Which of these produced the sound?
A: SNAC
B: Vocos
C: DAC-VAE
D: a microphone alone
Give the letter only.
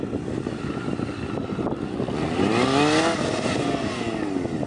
D